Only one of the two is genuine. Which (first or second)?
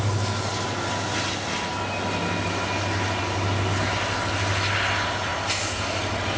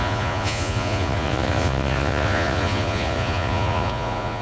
first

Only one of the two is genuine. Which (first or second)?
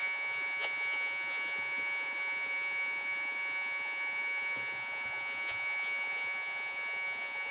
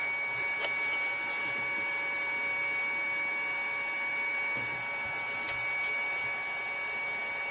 second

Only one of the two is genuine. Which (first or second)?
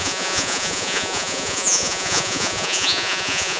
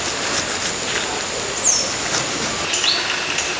second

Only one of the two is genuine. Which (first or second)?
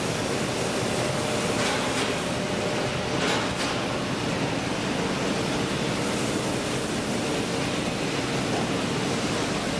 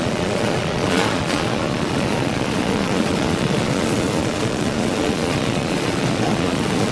first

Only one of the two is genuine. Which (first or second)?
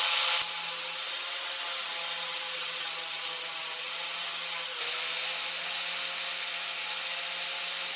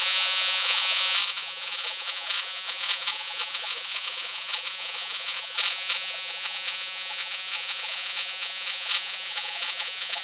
first